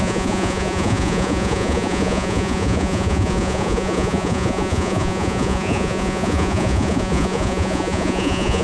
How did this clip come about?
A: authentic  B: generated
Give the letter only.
B